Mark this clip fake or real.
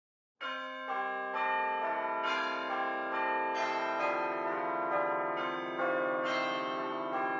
real